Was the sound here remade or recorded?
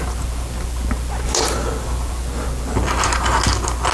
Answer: recorded